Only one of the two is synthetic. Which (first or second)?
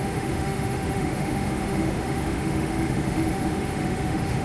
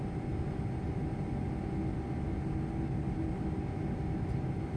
first